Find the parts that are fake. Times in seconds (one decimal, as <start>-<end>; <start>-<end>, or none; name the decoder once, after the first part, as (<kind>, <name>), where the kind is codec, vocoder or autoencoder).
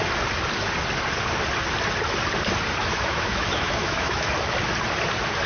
2.8-4.3 (autoencoder, DAC-VAE)